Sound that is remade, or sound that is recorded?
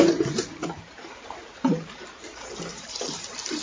remade